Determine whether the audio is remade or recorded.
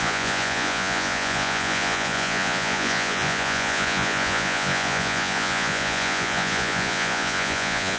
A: remade